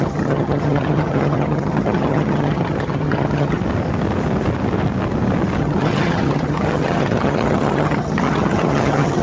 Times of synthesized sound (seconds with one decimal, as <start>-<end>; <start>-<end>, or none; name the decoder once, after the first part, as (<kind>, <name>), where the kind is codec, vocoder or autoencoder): 0.0-3.6 (vocoder, HiFi-GAN); 5.6-9.2